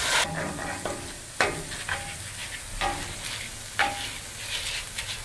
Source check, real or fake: real